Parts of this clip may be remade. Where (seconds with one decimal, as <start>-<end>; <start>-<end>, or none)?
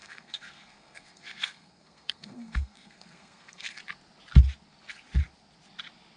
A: 0.0-3.8